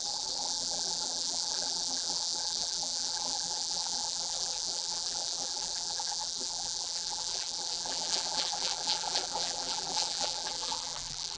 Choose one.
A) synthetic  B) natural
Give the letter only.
A